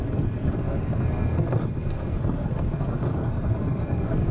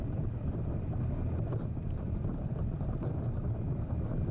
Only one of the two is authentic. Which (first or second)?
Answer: second